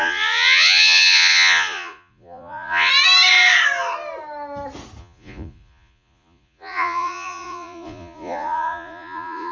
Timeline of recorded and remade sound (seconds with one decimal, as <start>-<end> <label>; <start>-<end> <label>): 0.0-2.9 remade; 2.9-5.0 recorded; 5.0-9.5 remade